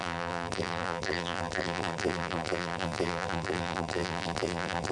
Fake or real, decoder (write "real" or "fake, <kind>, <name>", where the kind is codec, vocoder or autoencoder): fake, vocoder, BigVGAN v2